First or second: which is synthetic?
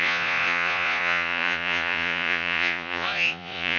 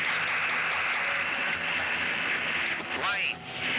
first